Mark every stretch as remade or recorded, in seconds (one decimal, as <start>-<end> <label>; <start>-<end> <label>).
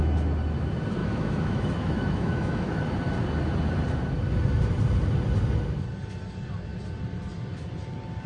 0.0-1.0 recorded; 1.0-2.8 remade; 2.8-8.3 recorded